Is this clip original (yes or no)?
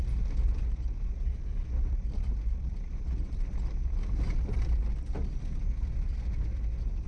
yes